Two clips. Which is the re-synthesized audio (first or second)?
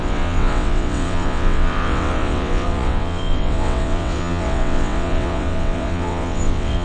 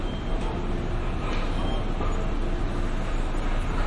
first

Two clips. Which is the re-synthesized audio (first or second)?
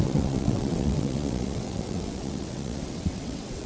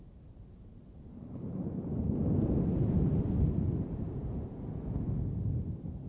first